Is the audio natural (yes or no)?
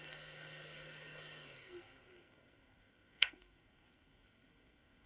no